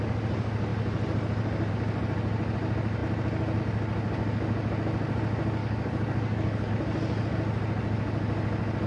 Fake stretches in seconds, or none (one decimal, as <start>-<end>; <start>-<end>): 5.6-6.7